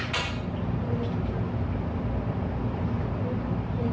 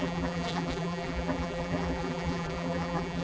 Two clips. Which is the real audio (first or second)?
first